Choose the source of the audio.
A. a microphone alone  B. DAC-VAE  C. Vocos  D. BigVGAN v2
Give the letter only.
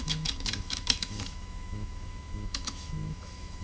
B